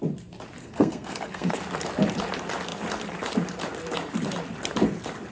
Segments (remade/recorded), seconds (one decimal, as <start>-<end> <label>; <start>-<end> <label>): 0.0-0.6 recorded; 0.6-1.6 remade; 1.6-5.3 recorded